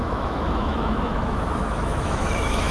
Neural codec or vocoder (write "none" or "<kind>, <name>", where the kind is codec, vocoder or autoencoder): autoencoder, DAC-VAE